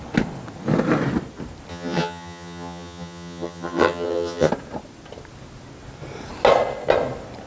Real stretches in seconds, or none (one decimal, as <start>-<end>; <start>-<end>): 0.0-1.7; 4.5-7.5